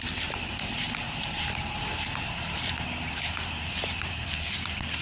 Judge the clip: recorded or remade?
remade